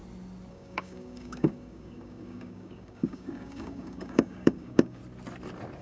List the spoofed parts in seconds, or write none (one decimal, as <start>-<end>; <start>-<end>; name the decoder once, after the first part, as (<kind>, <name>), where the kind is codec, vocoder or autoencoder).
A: 0.5-5.0 (codec, DAC)

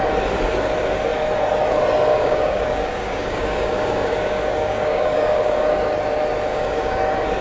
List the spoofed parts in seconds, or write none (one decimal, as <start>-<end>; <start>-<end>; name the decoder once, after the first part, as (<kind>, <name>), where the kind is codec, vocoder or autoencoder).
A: 2.1-5.7 (codec, DAC); 6.5-7.0

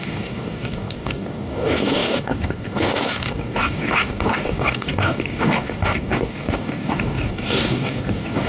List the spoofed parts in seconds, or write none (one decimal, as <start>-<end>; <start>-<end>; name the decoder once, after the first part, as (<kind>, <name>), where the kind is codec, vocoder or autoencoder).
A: 0.0-8.5 (codec, DAC)

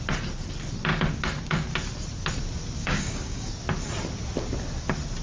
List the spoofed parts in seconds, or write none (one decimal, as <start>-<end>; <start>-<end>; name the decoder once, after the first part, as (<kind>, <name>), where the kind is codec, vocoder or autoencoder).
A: 2.8-3.5 (codec, DAC)

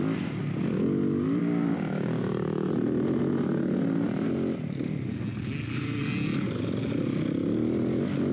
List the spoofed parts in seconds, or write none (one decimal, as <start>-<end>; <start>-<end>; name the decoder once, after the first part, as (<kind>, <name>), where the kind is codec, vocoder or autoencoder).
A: 1.4-2.7 (codec, DAC)